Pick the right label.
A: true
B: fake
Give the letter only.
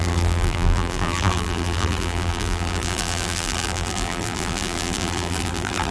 B